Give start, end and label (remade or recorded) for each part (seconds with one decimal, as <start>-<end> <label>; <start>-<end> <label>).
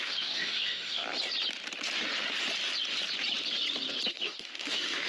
0.0-1.0 remade; 1.0-4.1 recorded; 4.1-5.1 remade